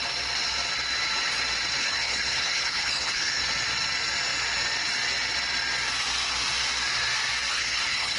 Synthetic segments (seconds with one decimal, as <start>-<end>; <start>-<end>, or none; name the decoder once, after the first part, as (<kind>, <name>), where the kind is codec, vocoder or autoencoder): 1.8-3.4 (codec, HILCodec); 7.5-8.2